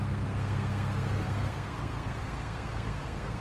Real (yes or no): no